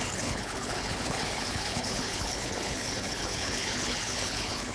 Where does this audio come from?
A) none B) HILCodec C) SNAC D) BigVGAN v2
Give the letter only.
B